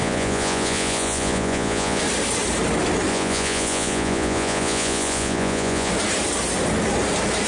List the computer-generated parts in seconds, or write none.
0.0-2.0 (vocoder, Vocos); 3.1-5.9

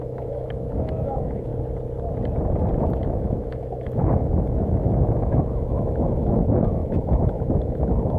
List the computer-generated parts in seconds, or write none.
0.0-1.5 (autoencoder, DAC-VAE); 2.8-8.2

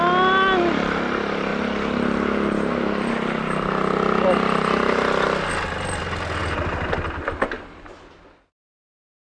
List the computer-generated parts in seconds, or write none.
none

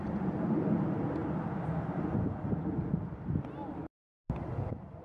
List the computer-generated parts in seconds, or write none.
none